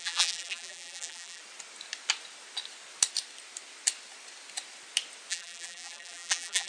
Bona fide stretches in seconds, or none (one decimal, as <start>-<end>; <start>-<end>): 1.4-5.3